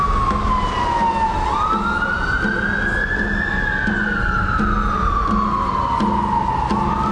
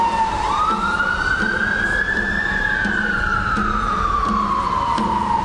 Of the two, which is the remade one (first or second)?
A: second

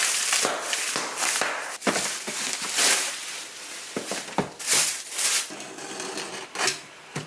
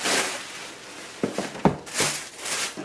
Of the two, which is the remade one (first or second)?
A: first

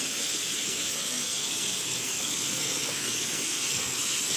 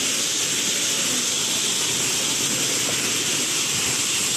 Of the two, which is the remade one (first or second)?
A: first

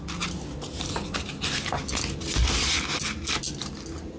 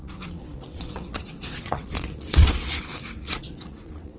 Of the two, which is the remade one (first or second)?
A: second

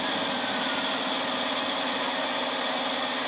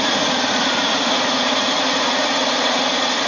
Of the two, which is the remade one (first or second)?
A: second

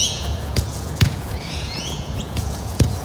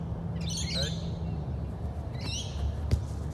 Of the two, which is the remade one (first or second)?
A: first